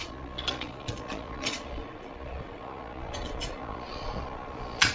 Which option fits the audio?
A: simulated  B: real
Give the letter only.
A